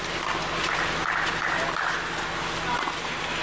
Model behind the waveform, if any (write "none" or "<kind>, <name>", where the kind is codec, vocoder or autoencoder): none